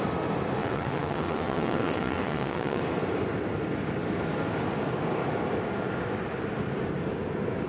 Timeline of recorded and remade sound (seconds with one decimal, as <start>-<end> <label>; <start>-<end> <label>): 0.0-0.6 recorded; 0.6-2.8 remade; 2.8-7.7 recorded